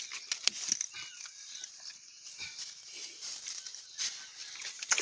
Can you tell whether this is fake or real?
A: real